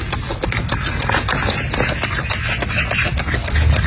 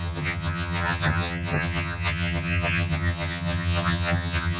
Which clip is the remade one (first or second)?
second